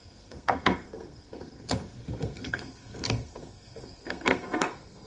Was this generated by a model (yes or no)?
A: yes